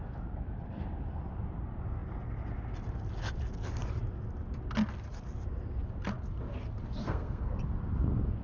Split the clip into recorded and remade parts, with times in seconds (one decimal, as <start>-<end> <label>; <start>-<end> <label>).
0.0-7.0 recorded; 7.0-7.5 remade; 7.5-8.4 recorded